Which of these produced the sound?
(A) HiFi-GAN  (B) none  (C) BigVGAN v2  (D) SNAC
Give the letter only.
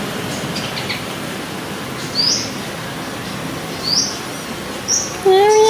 B